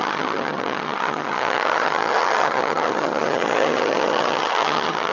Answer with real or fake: fake